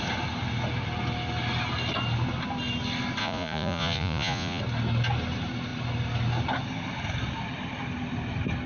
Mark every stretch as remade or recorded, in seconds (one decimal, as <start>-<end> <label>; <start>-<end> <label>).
0.0-3.2 recorded; 3.2-4.6 remade; 4.6-8.7 recorded